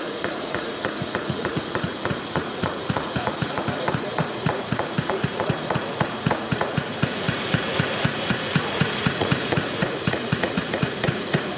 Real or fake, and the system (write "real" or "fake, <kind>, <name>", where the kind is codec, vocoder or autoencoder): fake, vocoder, Vocos